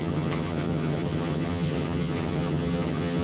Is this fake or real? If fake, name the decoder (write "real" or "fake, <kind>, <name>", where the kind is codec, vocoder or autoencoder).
fake, vocoder, HiFi-GAN